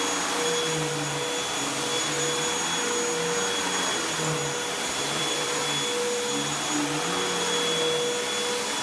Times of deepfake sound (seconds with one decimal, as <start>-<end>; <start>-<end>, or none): 4.7-5.6

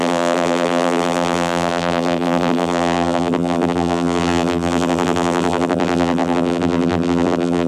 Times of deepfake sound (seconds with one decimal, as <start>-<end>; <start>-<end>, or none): 0.0-7.7